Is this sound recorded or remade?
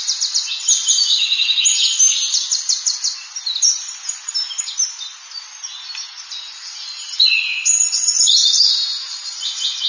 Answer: recorded